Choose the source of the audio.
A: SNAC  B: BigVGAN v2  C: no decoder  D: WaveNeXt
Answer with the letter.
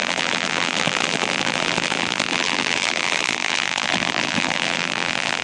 B